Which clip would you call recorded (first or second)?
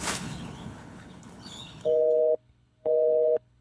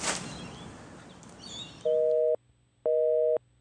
second